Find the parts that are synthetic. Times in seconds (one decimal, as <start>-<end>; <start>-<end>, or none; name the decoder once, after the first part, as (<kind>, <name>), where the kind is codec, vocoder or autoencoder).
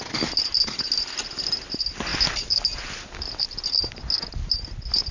none